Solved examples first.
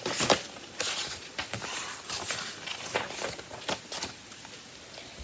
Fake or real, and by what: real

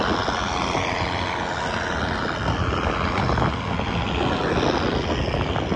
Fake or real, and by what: real